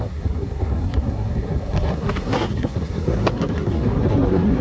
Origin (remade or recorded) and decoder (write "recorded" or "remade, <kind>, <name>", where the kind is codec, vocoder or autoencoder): remade, codec, SNAC